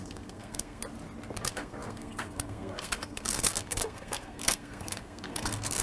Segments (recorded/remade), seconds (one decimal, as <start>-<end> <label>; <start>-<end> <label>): 0.0-0.8 remade; 0.8-1.4 recorded; 1.4-5.8 remade